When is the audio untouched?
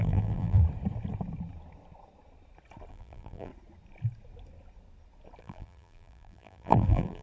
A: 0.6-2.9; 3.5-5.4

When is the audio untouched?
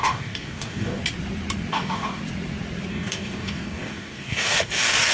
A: 1.0-1.7; 2.2-2.9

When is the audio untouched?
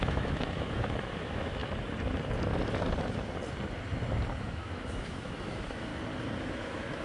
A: 1.6-4.4; 5.9-6.4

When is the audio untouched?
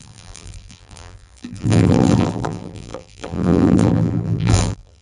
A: none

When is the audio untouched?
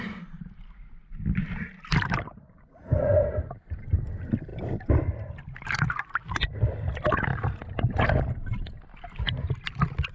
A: 0.0-10.1